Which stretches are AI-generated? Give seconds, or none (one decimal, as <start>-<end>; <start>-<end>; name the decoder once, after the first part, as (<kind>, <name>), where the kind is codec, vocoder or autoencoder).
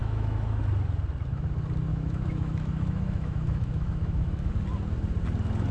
0.0-0.6 (autoencoder, DAC-VAE); 1.9-4.5